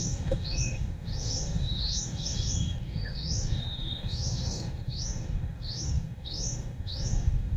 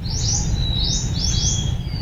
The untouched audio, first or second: second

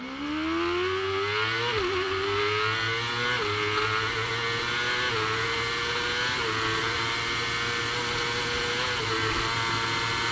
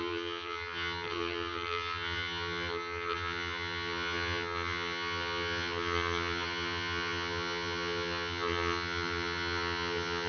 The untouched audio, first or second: first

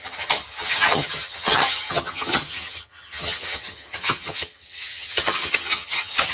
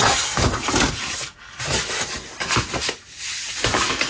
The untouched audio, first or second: second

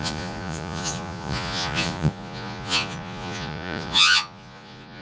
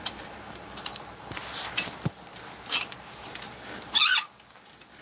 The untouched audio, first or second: second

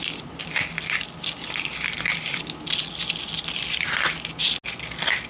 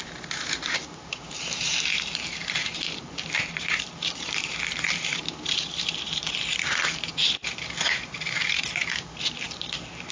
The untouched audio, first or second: first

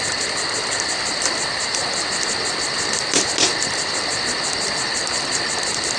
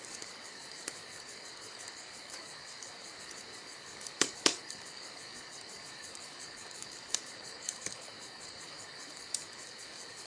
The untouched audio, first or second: first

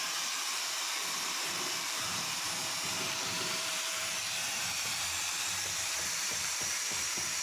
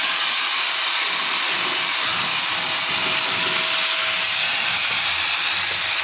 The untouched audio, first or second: second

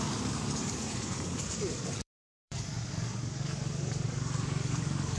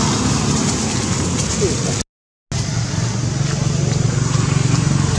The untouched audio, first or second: second